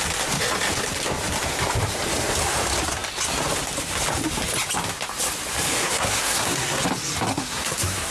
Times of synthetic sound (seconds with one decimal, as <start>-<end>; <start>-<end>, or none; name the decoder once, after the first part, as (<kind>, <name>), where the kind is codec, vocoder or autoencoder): 5.8-6.8 (codec, SNAC); 7.3-8.1

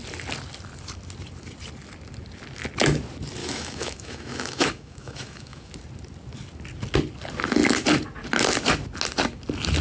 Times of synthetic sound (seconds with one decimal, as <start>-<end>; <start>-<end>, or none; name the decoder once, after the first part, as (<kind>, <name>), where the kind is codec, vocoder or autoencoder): 3.4-5.7 (autoencoder, DAC-VAE)

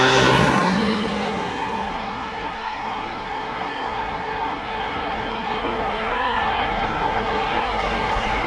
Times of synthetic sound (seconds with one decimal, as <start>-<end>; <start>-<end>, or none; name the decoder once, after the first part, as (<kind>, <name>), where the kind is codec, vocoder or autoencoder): 0.0-8.5 (codec, SNAC)

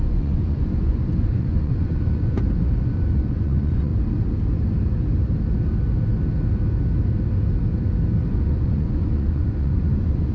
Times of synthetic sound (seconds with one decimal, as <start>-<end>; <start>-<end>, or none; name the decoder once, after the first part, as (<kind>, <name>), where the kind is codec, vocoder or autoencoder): 0.0-3.9 (vocoder, Vocos); 8.3-10.3